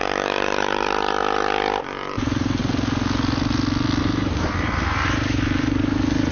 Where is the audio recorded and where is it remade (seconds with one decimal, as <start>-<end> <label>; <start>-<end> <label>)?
0.0-1.2 remade; 1.2-2.1 recorded; 2.1-2.6 remade; 2.6-4.0 recorded; 4.0-6.3 remade